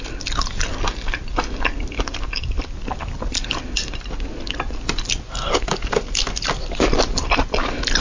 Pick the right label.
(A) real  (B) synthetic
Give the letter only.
A